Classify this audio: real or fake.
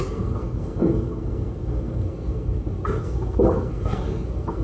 fake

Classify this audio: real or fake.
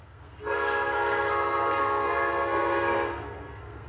fake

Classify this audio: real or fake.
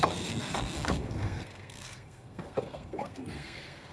fake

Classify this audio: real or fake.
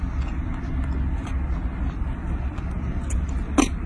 real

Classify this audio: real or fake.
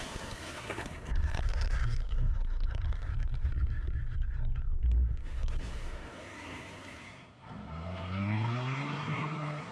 fake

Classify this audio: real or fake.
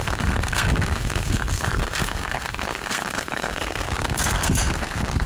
fake